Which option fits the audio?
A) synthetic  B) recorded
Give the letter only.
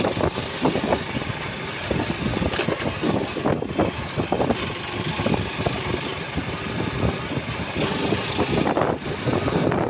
B